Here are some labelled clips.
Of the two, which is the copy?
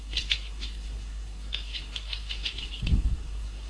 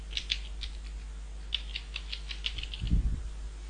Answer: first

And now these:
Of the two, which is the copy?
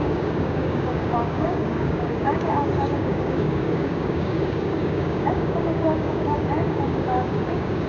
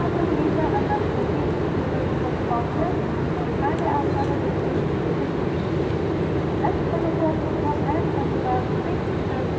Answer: first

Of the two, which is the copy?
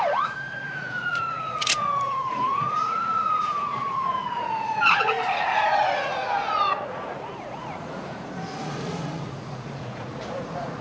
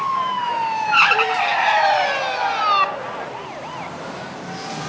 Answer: first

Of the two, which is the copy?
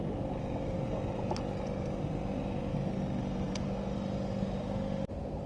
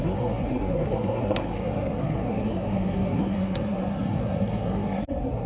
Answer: second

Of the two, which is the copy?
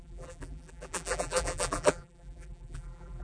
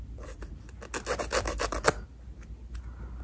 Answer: first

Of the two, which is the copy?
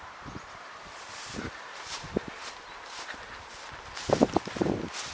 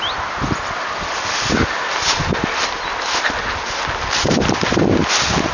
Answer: first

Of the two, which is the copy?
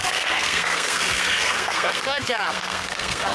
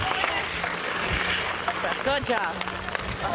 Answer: first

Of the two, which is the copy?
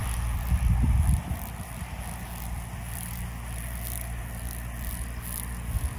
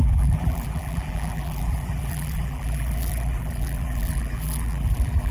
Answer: second